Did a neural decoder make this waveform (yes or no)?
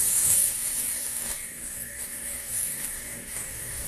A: yes